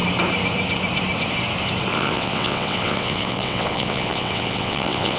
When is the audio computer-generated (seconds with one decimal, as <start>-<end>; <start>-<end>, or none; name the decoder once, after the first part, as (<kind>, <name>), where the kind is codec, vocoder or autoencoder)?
1.9-5.2 (vocoder, WaveNeXt)